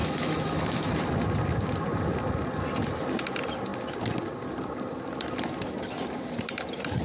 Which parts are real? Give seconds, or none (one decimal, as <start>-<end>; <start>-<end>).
0.9-7.0